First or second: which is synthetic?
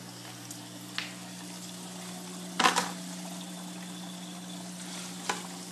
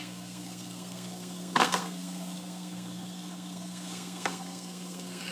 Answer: second